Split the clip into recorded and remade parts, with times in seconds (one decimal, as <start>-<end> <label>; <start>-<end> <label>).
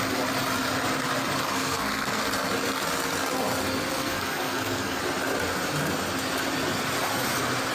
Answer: 0.0-1.4 recorded; 1.4-2.2 remade; 2.2-3.9 recorded; 3.9-5.0 remade; 5.0-7.7 recorded